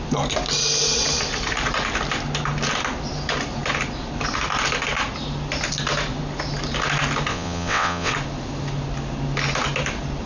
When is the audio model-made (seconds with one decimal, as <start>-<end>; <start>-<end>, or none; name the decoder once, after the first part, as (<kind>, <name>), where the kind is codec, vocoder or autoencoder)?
7.3-8.1 (vocoder, WaveNeXt)